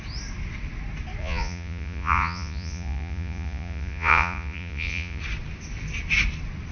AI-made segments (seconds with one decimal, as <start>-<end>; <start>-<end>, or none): 1.2-5.2